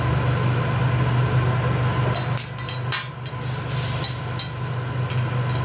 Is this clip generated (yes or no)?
no